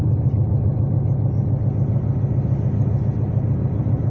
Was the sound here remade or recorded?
recorded